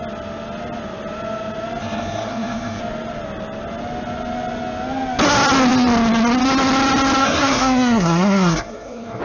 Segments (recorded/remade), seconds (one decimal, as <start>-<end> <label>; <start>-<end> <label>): 0.0-1.8 recorded; 1.8-2.8 remade; 2.8-7.2 recorded; 7.2-9.2 remade